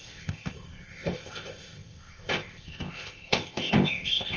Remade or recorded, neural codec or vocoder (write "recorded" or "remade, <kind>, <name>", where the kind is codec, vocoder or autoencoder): remade, codec, ZipCodec